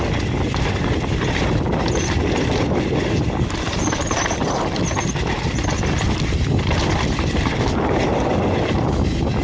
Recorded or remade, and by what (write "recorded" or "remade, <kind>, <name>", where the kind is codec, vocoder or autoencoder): recorded